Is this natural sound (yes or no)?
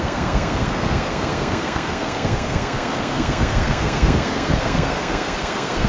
no